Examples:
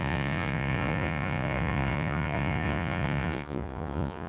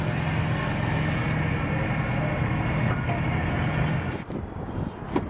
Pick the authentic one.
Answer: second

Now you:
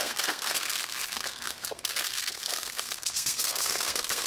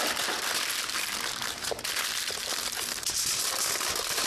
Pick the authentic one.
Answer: second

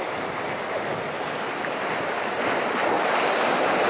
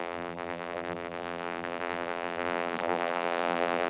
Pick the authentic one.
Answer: first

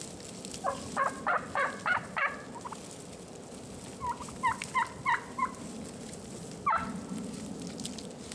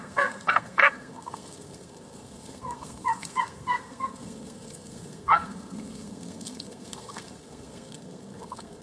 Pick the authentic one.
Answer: first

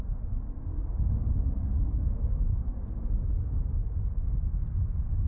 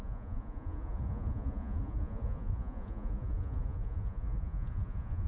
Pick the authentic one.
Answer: first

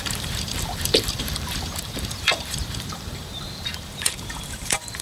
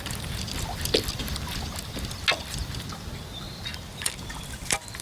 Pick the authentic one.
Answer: second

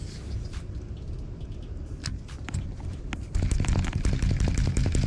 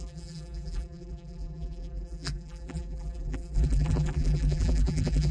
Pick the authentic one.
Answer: first